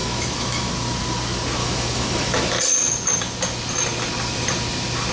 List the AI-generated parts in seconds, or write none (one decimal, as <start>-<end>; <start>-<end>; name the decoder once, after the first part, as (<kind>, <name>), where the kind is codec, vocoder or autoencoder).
0.0-0.7 (autoencoder, DAC-VAE); 1.6-2.6